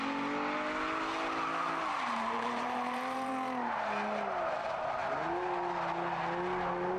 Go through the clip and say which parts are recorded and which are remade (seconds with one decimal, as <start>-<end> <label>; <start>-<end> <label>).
0.0-1.6 recorded; 1.6-3.3 remade; 3.3-7.0 recorded

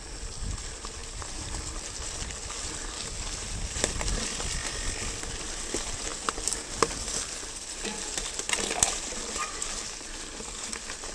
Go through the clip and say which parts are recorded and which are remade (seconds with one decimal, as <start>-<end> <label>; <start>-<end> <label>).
0.0-11.1 recorded